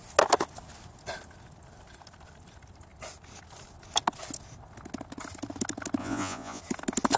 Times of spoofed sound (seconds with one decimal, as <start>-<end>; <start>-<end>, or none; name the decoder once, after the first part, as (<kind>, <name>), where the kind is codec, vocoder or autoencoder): 6.0-6.6 (vocoder, Vocos)